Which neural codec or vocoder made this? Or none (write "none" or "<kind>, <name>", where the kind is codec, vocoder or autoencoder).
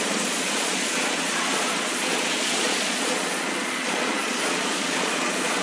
vocoder, Vocos